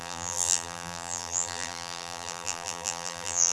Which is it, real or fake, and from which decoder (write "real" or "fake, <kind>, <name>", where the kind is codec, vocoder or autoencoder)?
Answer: fake, vocoder, BigVGAN v2